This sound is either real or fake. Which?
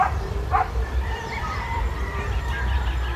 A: fake